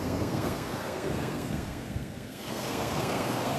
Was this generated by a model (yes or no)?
yes